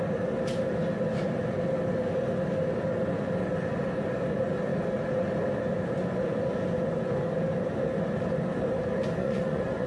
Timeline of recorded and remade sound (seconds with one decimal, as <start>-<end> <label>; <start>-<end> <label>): 0.0-9.2 recorded; 9.2-9.9 remade